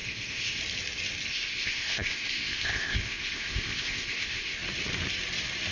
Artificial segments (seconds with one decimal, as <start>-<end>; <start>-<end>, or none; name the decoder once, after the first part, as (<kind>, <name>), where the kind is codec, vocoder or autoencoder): 0.0-0.6 (codec, ZipCodec); 1.3-4.6